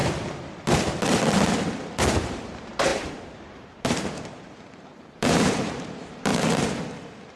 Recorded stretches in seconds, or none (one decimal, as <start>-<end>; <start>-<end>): 0.0-2.1; 6.3-7.4